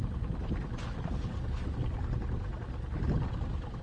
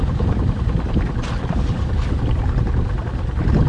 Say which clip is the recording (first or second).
first